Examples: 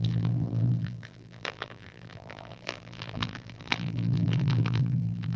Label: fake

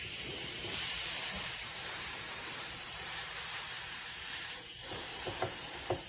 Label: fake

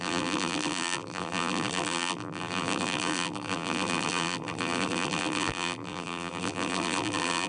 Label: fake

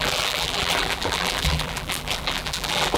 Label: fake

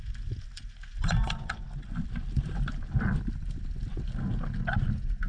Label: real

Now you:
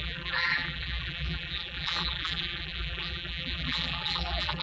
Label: fake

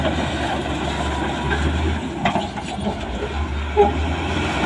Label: real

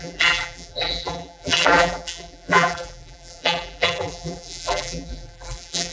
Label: fake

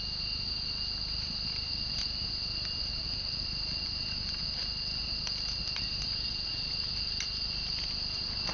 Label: real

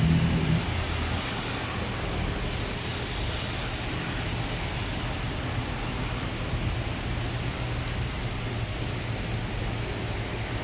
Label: real